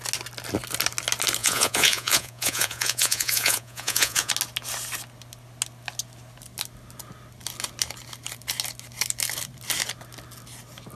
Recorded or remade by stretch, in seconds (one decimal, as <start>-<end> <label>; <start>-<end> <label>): 0.0-1.4 recorded; 1.4-4.3 remade; 4.3-10.9 recorded